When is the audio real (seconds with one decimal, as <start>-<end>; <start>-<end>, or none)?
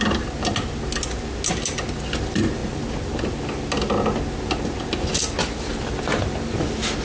0.0-7.0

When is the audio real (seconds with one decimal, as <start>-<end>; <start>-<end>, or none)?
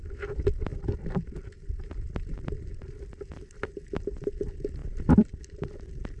0.0-0.7; 2.7-4.8